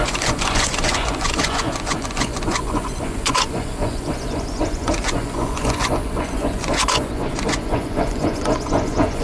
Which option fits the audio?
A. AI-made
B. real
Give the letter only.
A